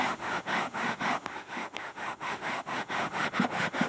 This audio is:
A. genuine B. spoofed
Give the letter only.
B